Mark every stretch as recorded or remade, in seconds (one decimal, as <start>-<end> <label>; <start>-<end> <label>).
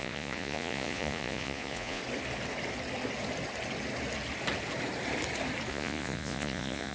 0.0-2.0 remade; 2.0-5.7 recorded; 5.7-6.9 remade